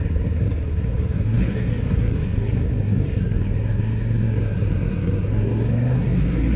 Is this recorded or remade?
remade